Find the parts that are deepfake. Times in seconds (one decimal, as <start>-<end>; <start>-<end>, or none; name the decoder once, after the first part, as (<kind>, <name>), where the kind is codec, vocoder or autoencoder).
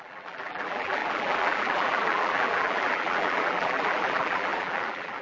0.0-5.2 (vocoder, BigVGAN v2)